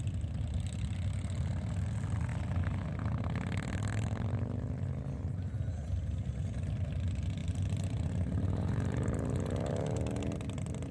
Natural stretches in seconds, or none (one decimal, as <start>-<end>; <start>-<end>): 0.0-7.4; 10.2-10.9